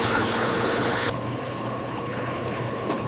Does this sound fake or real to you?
fake